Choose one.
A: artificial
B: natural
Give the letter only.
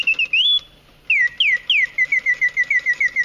B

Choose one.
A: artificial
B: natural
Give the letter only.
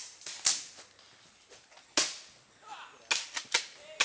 B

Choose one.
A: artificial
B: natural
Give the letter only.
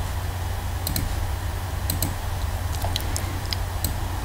B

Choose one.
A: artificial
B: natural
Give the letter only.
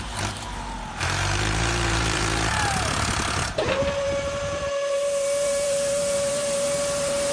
A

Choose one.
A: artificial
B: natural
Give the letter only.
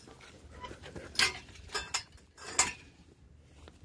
B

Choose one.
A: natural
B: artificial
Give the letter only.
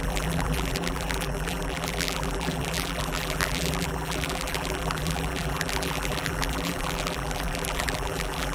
B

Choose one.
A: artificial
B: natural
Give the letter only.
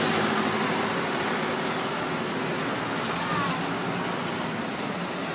B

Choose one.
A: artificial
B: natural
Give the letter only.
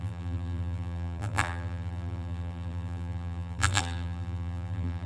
A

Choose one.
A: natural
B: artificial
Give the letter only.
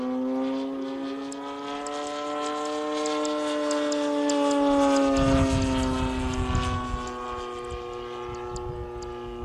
A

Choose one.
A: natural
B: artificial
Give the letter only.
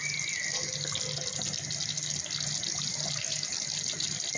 A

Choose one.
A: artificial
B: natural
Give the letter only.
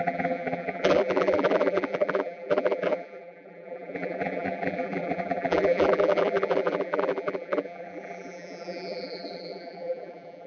A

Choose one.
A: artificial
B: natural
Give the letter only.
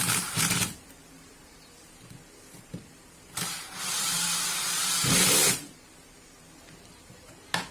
A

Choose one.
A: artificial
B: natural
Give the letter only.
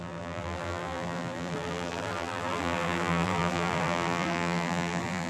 A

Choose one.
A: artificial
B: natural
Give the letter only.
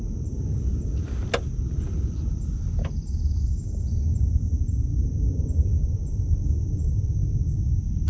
B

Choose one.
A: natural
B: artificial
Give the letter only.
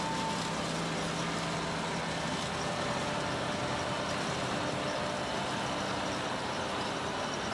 A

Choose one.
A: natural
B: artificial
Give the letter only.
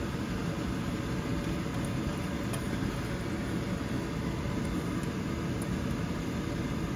A